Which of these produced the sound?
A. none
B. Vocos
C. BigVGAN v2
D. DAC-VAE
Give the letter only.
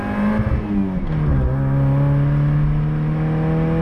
A